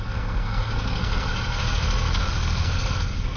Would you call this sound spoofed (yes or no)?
yes